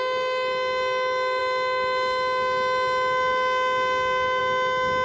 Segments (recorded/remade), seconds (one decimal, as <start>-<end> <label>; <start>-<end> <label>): 0.0-5.0 recorded